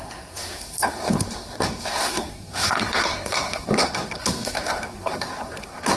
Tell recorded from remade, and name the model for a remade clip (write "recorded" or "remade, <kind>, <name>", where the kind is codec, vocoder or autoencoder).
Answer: remade, codec, SNAC